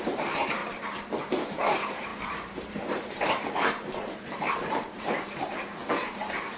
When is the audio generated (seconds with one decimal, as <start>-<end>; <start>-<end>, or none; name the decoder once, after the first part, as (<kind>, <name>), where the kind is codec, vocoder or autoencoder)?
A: 0.0-0.6 (vocoder, BigVGAN v2); 1.2-6.6